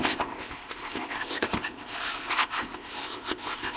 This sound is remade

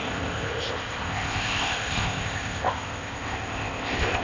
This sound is remade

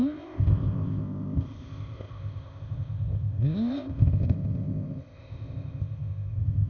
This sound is remade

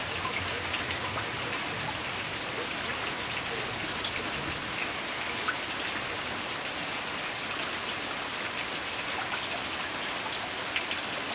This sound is recorded